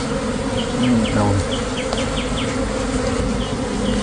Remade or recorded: recorded